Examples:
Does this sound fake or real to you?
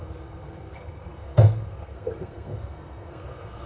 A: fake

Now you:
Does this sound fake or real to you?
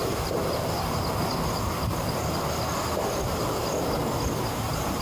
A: real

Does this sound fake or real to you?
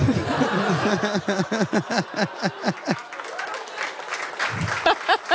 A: real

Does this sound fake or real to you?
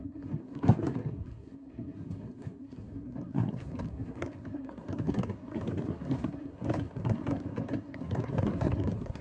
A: fake